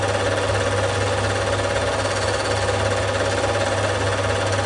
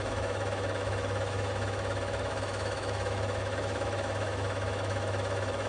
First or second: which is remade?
second